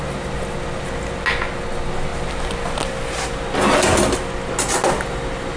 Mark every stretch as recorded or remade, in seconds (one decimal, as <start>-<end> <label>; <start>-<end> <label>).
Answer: 0.0-5.6 recorded